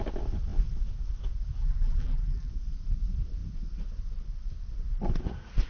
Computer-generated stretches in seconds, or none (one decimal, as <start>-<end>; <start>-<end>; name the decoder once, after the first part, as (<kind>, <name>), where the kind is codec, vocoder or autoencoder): 1.6-2.5 (vocoder, BigVGAN v2)